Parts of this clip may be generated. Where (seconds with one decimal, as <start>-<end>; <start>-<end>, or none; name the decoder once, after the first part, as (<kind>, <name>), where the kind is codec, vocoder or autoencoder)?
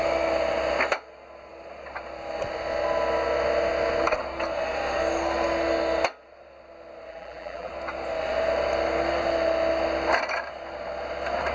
7.1-7.7 (vocoder, BigVGAN v2)